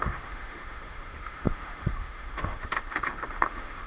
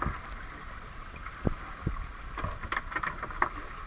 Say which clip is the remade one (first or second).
first